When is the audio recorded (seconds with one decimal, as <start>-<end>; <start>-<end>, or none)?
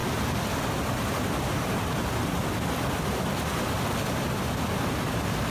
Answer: 0.0-5.5